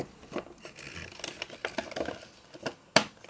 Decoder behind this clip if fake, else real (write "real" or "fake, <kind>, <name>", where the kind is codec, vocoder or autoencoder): real